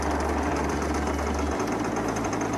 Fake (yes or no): no